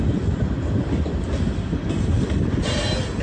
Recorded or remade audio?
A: recorded